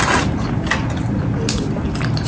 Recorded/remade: recorded